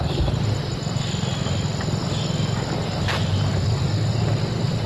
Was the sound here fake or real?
fake